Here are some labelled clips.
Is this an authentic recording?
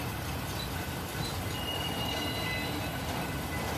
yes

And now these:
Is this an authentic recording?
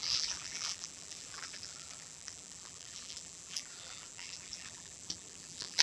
no